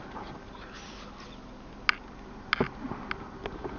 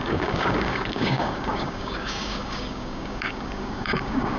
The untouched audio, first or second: first